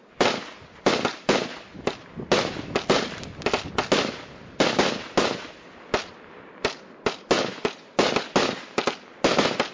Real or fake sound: real